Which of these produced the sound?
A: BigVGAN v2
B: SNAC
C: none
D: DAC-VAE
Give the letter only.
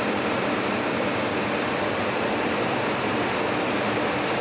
C